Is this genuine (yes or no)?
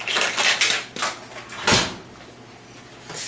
yes